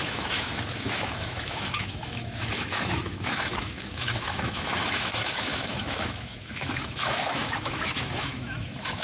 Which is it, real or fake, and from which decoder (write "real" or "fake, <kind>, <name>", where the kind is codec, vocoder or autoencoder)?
fake, autoencoder, DAC-VAE